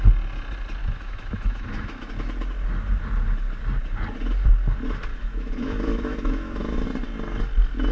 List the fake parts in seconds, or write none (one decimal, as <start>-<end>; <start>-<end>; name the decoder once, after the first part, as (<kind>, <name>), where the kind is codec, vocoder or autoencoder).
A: 0.8-2.1 (autoencoder, DAC-VAE); 5.1-6.6